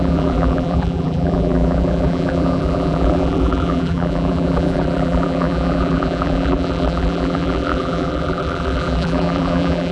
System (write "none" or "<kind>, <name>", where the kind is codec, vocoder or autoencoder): vocoder, BigVGAN v2